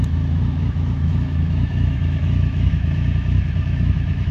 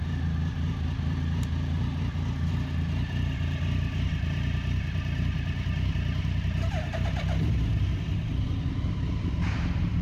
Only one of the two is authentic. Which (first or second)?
second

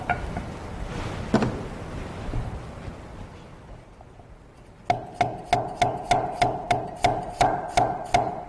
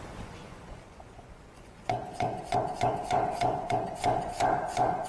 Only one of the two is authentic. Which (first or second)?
first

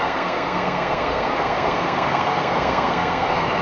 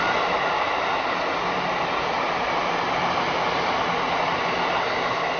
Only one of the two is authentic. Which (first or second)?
second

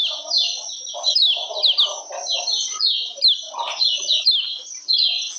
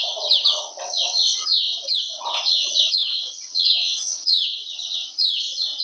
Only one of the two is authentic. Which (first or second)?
first